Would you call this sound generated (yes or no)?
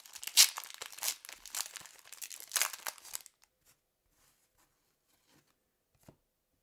no